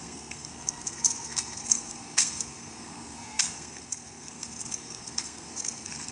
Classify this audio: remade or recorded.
remade